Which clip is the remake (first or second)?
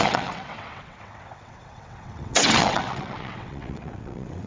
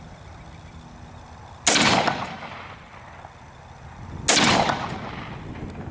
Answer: first